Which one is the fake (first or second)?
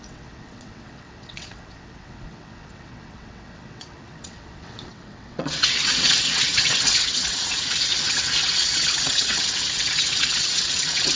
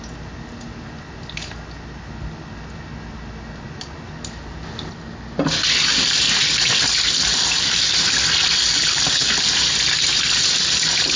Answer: first